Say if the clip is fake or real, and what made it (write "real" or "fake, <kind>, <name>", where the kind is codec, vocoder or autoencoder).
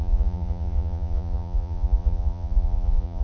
fake, vocoder, Vocos